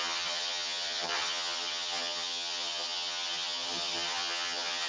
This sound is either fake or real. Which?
fake